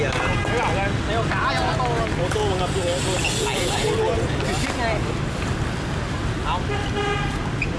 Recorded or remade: recorded